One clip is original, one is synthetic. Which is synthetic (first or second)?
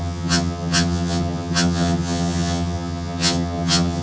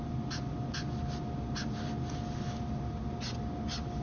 first